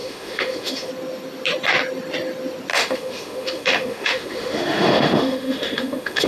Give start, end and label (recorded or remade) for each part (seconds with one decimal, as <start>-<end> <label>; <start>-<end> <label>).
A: 0.0-0.9 remade; 0.9-2.7 recorded; 2.7-6.3 remade